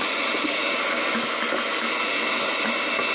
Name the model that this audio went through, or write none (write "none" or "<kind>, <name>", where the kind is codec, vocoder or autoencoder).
none